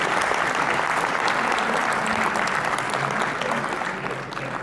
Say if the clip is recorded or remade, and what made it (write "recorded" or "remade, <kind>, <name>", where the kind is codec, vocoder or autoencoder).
recorded